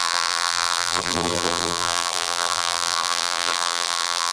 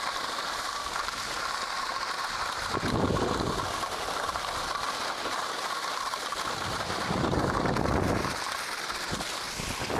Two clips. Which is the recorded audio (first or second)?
second